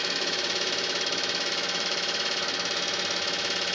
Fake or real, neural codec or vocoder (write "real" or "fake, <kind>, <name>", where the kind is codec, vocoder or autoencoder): fake, autoencoder, DAC-VAE